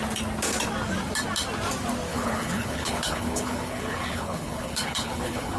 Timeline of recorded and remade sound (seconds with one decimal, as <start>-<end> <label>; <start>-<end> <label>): 0.0-2.1 recorded; 2.1-5.6 remade